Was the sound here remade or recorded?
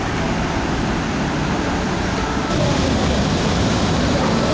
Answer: recorded